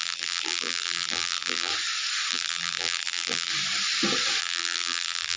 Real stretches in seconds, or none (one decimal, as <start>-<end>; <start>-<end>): 1.7-2.3; 3.5-4.4